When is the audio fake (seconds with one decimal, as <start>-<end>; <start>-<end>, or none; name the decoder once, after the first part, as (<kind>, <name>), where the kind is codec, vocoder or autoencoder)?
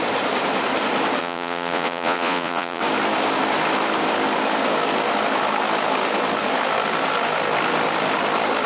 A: 1.2-2.8 (vocoder, Vocos)